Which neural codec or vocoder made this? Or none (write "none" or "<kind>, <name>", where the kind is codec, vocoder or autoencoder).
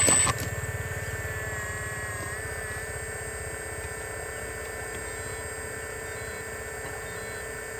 none